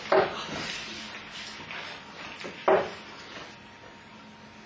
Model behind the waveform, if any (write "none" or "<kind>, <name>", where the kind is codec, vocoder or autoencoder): none